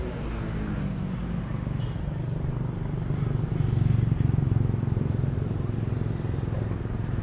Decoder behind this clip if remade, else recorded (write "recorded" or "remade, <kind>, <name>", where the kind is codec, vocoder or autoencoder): recorded